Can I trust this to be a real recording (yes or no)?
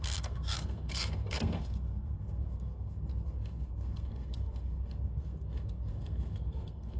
no